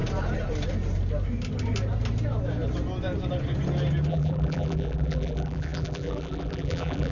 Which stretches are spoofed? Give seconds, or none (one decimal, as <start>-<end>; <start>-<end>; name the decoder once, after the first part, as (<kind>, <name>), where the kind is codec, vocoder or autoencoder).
4.1-7.1 (vocoder, BigVGAN v2)